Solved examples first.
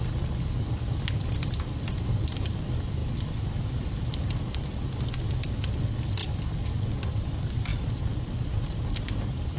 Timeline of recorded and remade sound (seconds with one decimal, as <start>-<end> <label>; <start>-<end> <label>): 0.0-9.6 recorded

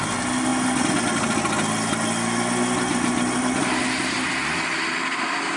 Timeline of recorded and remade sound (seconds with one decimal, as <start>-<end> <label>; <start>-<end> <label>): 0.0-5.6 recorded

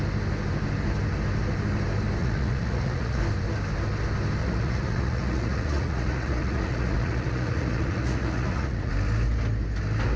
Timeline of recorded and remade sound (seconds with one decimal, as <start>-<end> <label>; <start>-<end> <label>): 0.0-2.2 recorded; 2.2-3.2 remade; 3.2-4.4 recorded; 4.4-8.9 remade; 8.9-10.2 recorded